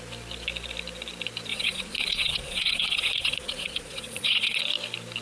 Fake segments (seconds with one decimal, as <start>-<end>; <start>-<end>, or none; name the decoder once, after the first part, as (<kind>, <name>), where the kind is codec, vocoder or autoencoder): 1.5-4.6 (vocoder, Vocos)